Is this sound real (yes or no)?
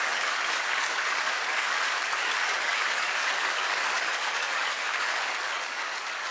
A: no